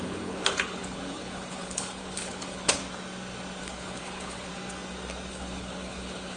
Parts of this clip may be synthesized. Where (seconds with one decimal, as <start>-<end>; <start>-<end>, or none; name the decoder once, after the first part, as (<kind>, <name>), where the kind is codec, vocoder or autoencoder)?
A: 0.0-2.8 (codec, HILCodec); 3.6-4.5; 5.3-6.4